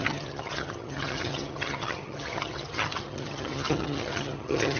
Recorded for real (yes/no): no